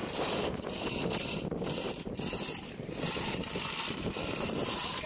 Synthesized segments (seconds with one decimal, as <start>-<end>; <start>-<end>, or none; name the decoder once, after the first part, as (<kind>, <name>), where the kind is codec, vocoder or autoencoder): 3.1-5.1 (vocoder, BigVGAN v2)